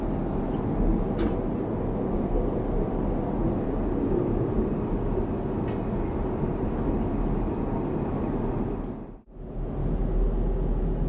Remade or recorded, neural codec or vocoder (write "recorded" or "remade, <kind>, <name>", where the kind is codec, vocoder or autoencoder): recorded